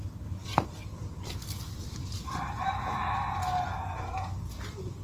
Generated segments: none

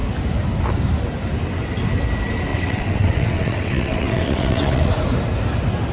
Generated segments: 2.5-4.9 (vocoder, WaveNeXt)

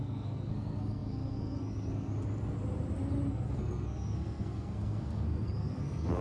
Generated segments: 0.0-2.1 (codec, SNAC); 3.3-6.2

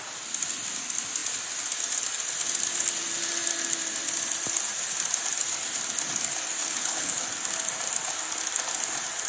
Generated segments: 6.6-7.1 (codec, HILCodec)

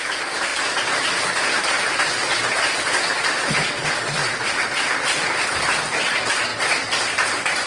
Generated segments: 0.0-0.5 (vocoder, BigVGAN v2); 1.0-2.4; 4.0-7.7

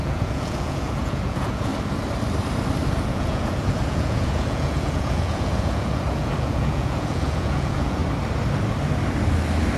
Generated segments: 0.0-1.7 (vocoder, Vocos); 2.9-8.0